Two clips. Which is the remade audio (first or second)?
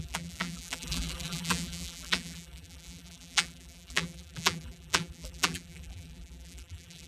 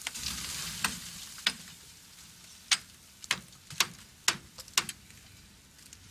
first